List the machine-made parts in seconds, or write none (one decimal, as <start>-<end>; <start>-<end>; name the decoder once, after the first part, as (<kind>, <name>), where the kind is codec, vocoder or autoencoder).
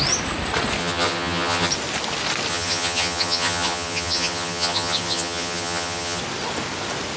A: 0.8-1.7 (vocoder, HiFi-GAN); 2.5-6.2